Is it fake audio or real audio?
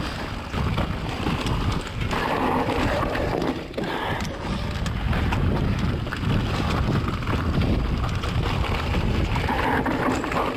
real